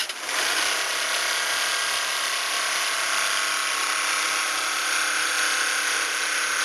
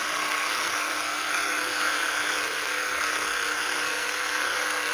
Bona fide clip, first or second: first